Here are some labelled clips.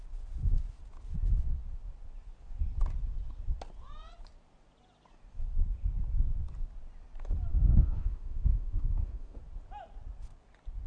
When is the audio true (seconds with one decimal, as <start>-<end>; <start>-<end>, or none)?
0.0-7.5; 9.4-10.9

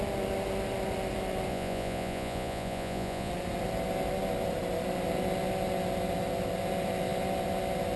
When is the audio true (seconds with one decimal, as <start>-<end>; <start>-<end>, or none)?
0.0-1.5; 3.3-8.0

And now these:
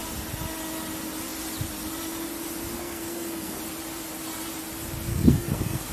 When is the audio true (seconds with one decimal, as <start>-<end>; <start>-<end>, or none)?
0.0-2.8; 3.6-5.1